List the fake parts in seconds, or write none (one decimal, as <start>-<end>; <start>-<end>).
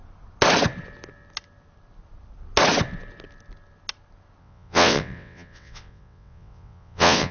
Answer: 4.4-7.3